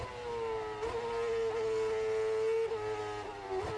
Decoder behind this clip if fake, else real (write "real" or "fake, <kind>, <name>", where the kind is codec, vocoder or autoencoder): real